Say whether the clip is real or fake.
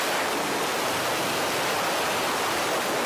real